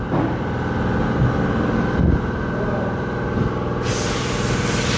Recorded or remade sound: recorded